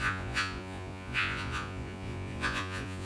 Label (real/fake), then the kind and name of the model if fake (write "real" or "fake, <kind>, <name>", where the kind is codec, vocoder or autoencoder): fake, vocoder, Vocos